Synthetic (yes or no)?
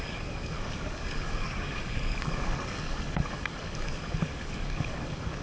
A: yes